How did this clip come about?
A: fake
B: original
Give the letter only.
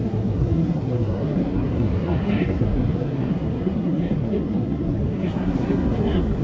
A